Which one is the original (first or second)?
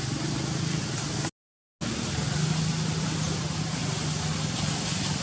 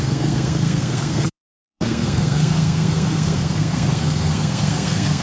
first